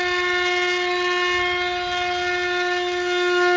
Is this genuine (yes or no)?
yes